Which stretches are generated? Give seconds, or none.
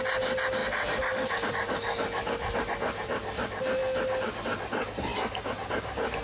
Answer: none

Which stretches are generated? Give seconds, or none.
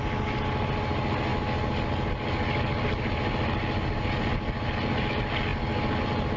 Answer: none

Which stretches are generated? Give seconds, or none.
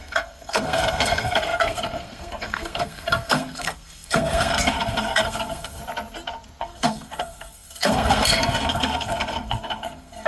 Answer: 0.0-5.8 (codec, SNAC); 6.6-10.3